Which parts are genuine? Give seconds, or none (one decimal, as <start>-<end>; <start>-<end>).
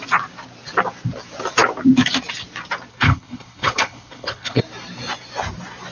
0.0-2.9; 4.6-5.9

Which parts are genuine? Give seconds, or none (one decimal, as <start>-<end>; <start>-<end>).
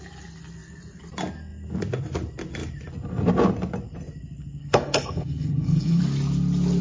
0.0-4.6; 6.0-6.8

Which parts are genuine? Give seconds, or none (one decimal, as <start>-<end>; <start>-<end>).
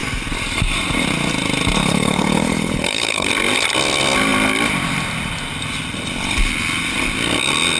0.0-1.8; 3.3-7.8